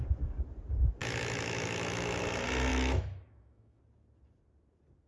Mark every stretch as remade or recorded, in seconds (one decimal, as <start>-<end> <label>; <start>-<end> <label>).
0.0-1.0 recorded; 1.0-2.2 remade; 2.2-2.7 recorded; 2.7-3.8 remade; 3.8-5.1 recorded